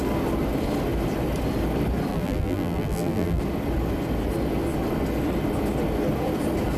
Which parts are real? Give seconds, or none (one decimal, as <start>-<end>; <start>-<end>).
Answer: 0.0-2.1; 3.4-6.8